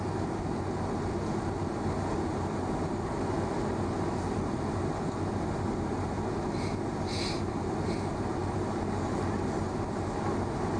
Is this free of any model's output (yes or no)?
yes